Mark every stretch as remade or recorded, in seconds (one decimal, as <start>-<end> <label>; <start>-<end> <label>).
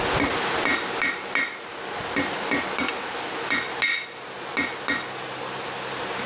0.0-6.3 recorded